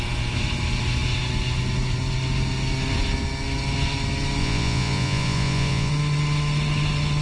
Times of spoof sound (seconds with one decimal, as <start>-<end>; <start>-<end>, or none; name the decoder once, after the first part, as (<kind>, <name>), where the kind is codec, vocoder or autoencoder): 4.4-5.9 (vocoder, Vocos)